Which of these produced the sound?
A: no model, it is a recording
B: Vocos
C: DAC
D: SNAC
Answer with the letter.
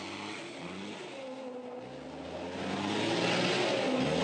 A